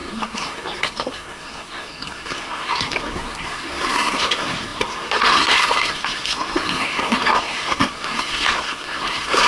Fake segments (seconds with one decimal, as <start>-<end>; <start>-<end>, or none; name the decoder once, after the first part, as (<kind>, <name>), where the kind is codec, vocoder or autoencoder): 0.0-9.5 (codec, SNAC)

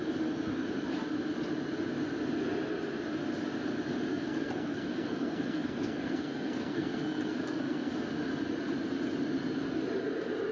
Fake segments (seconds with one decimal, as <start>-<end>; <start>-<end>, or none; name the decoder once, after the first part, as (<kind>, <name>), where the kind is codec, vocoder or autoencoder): 4.1-7.9 (codec, SNAC)